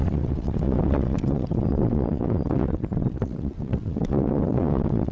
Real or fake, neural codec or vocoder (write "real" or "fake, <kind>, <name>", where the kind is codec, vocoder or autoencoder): fake, vocoder, WaveNeXt